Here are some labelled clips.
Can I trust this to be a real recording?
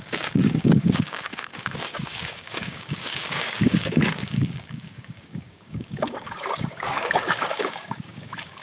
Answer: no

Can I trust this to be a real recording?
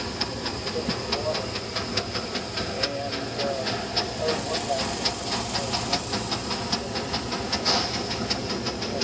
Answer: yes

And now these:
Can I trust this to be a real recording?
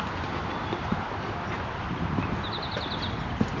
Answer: yes